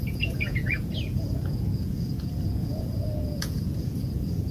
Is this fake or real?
fake